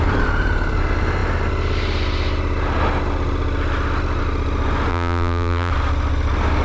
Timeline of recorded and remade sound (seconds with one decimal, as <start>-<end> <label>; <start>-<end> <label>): 0.0-4.9 recorded; 4.9-5.7 remade; 5.7-6.6 recorded